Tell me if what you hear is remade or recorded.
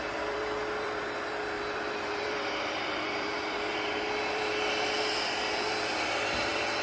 remade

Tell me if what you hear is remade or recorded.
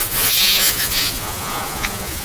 remade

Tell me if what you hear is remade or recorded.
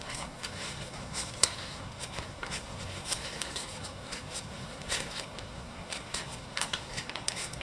remade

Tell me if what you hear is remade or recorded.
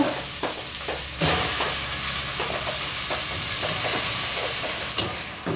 recorded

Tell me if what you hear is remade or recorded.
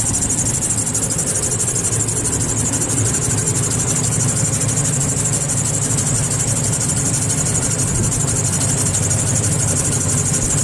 recorded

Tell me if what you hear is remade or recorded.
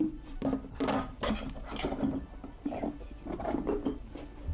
recorded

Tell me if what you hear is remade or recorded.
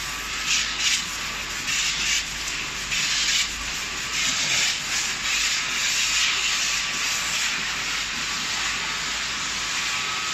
recorded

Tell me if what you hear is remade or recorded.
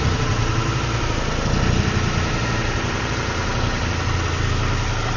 recorded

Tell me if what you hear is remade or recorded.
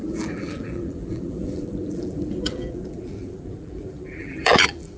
remade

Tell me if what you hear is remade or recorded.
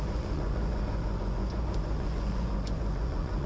remade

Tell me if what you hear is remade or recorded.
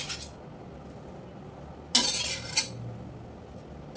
recorded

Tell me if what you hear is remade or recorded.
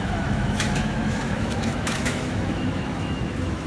remade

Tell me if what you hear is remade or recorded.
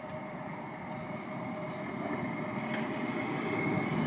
recorded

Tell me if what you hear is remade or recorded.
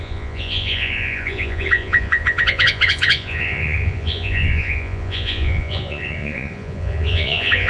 remade